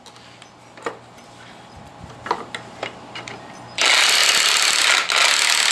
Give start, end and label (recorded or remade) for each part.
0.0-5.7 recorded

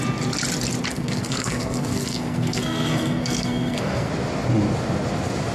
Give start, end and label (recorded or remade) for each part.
0.0-0.9 recorded; 0.9-4.1 remade; 4.1-5.5 recorded

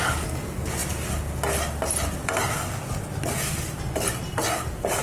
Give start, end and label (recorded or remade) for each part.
0.0-5.0 recorded